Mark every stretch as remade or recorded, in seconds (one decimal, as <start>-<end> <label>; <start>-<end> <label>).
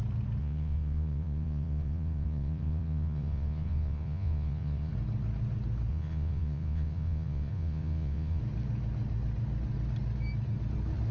0.0-0.4 recorded; 0.4-4.9 remade; 4.9-5.9 recorded; 5.9-8.4 remade; 8.4-11.1 recorded